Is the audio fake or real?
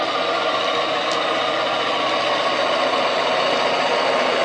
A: real